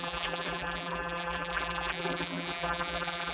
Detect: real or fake fake